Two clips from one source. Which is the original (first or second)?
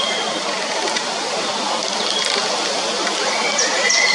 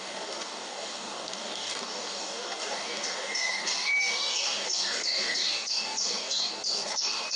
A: first